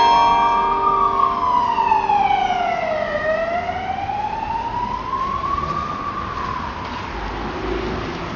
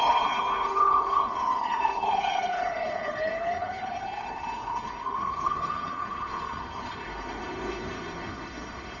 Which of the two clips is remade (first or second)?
second